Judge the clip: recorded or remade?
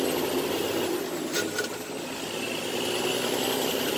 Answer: recorded